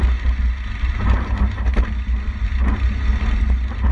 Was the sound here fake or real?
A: real